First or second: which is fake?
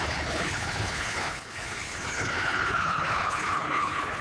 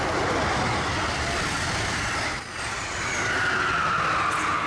first